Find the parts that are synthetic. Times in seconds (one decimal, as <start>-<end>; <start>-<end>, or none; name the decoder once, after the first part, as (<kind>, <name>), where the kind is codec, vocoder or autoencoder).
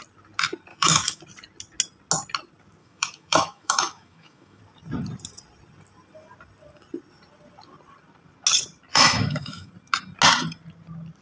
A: 0.7-1.2 (autoencoder, DAC-VAE); 2.8-4.6; 8.9-9.7